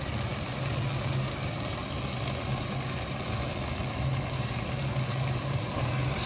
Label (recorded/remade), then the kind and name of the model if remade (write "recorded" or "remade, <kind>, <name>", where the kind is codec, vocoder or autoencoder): recorded